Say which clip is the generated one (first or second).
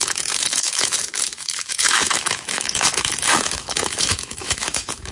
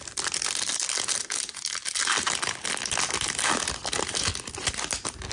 first